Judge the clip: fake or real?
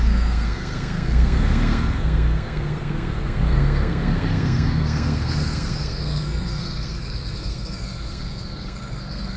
fake